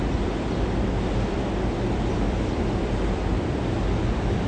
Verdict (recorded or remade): remade